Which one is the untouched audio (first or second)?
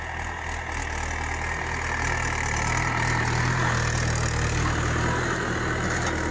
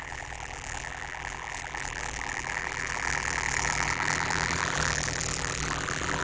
first